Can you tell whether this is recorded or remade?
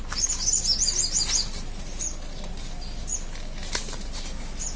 recorded